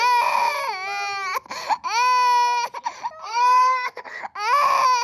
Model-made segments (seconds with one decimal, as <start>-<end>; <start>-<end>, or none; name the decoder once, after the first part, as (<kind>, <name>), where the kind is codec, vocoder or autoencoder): 3.2-4.2 (codec, SNAC)

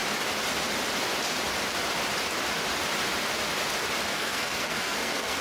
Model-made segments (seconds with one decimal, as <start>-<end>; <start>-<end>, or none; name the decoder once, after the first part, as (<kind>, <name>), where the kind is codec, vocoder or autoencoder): 4.1-5.4 (codec, SNAC)